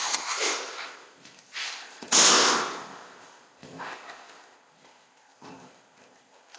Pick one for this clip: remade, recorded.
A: remade